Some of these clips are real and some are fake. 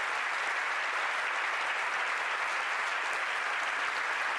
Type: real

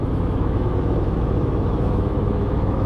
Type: fake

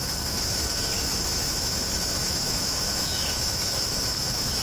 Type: fake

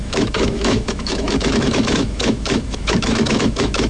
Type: fake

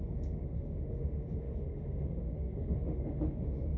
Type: fake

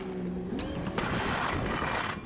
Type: real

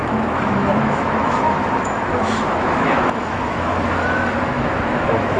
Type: fake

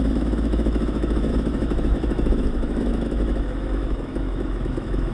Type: fake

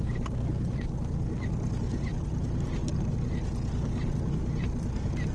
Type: real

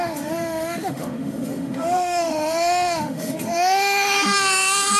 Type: fake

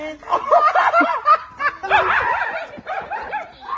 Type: real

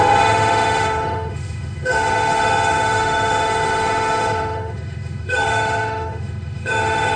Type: fake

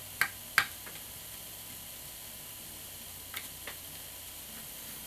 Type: real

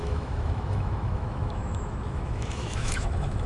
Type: fake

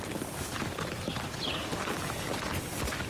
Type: real